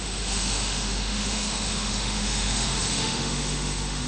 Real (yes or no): no